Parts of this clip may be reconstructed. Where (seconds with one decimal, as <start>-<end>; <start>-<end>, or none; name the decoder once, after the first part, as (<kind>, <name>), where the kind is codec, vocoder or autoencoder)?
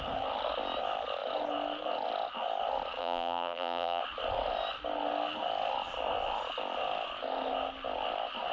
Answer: 3.0-4.0 (vocoder, BigVGAN v2)